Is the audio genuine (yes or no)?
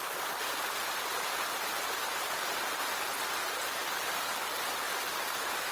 yes